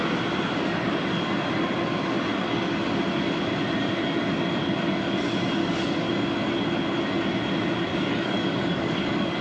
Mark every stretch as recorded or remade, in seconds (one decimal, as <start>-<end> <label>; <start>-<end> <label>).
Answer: 0.0-2.3 recorded; 2.3-3.0 remade; 3.0-5.6 recorded; 5.6-6.1 remade; 6.1-7.9 recorded; 7.9-9.4 remade

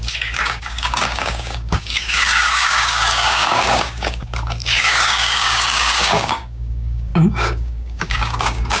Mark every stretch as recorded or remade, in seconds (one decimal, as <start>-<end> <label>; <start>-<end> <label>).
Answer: 0.0-8.8 remade

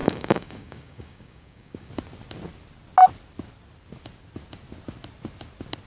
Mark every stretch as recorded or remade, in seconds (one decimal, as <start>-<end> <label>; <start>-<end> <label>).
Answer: 0.0-1.9 remade; 1.9-5.9 recorded

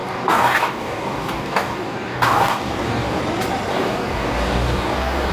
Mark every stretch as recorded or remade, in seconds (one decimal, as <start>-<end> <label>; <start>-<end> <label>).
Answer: 0.0-3.2 remade; 3.2-3.7 recorded; 3.7-5.3 remade

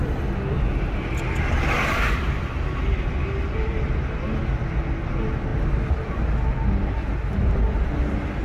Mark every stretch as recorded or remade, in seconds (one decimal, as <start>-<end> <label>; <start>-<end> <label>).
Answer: 0.0-8.4 recorded

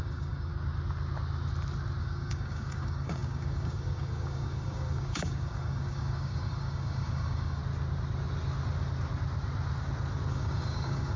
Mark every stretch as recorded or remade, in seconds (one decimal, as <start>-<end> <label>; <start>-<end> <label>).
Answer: 0.0-0.5 remade; 0.5-2.0 recorded; 2.0-7.6 remade; 7.6-10.3 recorded; 10.3-11.2 remade

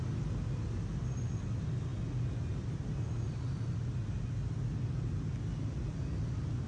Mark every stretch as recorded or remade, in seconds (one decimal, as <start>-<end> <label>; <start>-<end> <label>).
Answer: 0.0-6.7 recorded

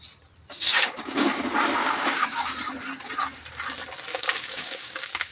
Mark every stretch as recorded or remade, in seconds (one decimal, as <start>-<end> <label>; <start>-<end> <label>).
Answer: 0.0-0.7 recorded; 0.7-1.4 remade; 1.4-1.8 recorded; 1.8-2.5 remade; 2.5-4.1 recorded; 4.1-5.3 remade